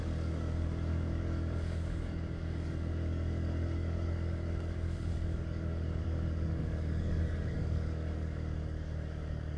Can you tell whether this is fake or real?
fake